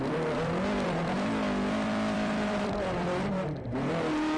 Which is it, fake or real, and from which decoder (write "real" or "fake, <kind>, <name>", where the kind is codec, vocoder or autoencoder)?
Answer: fake, vocoder, BigVGAN v2